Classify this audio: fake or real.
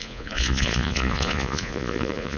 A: fake